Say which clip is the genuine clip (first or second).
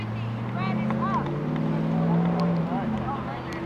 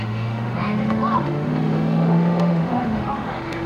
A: first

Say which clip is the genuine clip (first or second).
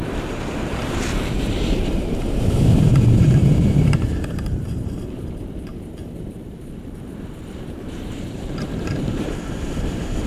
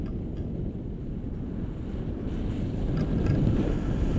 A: second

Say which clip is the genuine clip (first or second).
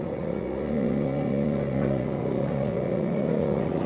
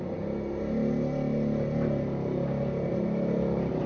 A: second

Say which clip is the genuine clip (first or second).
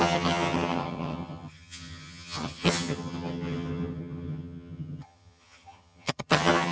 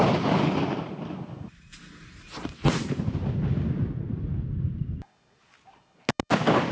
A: second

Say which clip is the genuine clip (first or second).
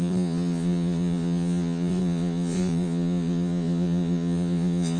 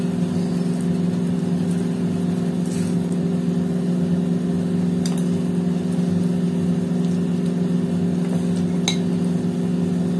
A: second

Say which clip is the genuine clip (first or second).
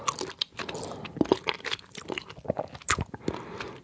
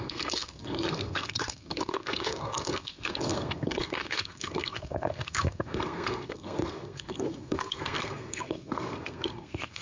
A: first